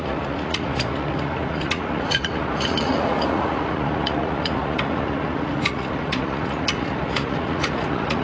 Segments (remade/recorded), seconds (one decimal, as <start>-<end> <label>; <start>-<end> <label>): 0.0-8.2 remade